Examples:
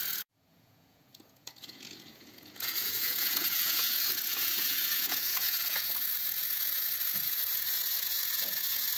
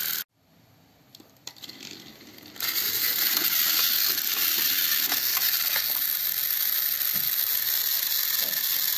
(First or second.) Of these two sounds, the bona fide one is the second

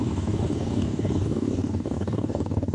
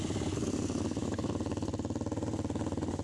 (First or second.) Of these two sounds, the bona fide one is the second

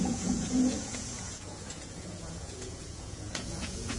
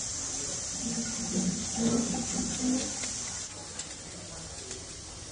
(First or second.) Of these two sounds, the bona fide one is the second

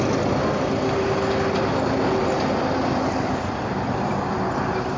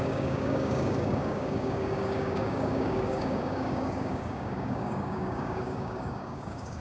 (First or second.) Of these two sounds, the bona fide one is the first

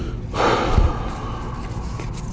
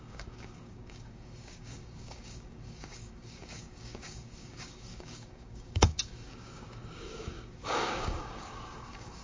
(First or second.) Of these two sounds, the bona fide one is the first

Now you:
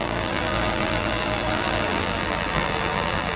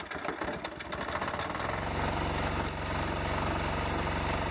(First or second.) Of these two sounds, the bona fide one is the second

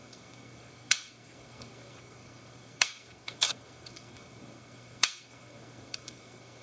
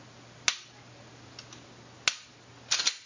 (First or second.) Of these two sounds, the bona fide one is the second